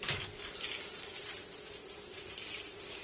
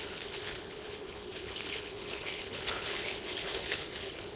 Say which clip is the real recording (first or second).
first